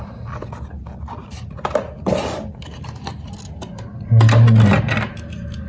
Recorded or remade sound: recorded